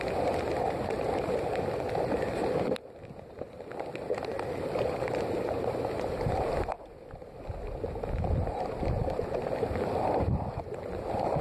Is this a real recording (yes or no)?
yes